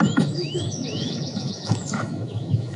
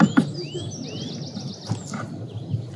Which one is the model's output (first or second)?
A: first